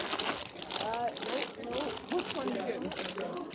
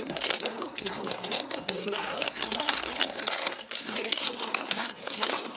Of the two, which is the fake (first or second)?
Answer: second